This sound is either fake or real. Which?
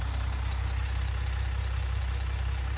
real